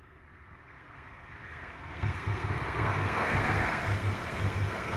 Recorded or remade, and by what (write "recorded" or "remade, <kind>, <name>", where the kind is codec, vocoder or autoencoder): remade, codec, SNAC